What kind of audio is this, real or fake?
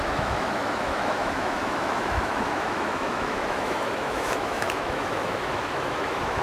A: fake